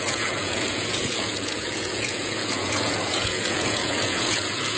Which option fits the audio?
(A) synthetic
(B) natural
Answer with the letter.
A